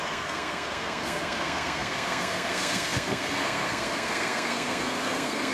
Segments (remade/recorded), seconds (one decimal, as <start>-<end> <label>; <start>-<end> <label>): 0.0-5.5 remade